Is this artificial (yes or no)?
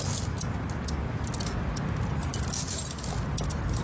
no